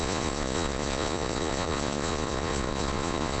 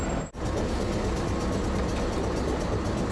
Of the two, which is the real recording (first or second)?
second